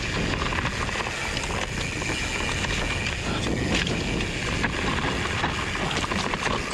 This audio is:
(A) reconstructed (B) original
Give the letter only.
B